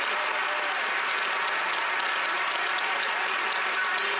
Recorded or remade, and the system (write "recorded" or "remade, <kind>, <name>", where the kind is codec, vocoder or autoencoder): recorded